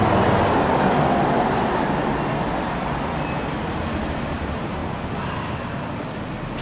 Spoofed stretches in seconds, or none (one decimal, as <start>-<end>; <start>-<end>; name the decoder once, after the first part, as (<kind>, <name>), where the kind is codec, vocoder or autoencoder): none